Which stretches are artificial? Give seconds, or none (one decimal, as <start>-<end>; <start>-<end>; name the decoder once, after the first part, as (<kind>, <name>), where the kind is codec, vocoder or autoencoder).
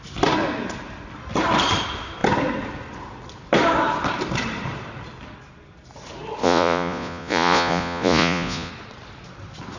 6.4-8.7 (vocoder, Vocos)